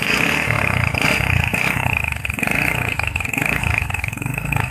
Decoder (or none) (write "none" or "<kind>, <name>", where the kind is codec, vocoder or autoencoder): codec, SNAC